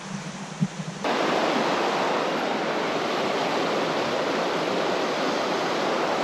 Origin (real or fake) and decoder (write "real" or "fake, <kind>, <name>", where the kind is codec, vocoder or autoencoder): real